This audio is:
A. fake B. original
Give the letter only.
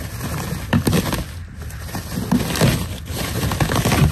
B